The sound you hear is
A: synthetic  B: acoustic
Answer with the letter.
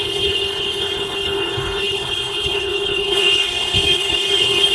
A